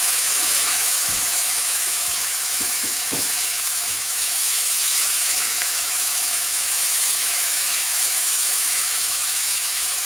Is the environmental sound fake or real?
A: fake